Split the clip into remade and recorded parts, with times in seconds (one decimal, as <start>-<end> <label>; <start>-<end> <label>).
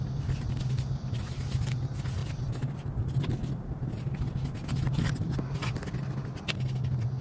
0.0-7.2 recorded